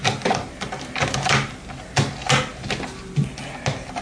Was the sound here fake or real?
real